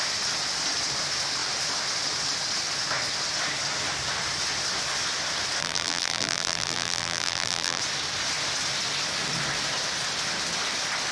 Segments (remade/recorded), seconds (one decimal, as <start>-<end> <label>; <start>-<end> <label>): 0.0-5.6 recorded; 5.6-7.8 remade; 7.8-11.1 recorded